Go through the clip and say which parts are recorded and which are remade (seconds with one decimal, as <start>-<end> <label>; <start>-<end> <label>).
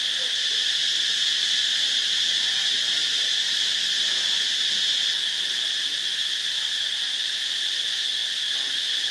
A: 0.0-0.8 remade; 0.8-1.4 recorded; 1.4-2.0 remade; 2.0-7.2 recorded; 7.2-8.2 remade; 8.2-9.1 recorded